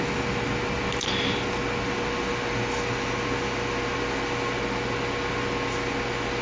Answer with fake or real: real